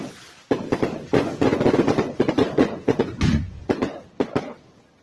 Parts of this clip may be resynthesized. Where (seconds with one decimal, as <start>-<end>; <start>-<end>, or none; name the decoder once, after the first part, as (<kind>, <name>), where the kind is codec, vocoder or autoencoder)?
1.1-4.1 (vocoder, Vocos)